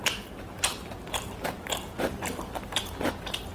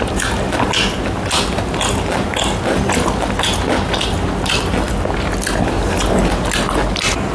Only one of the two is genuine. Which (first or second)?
second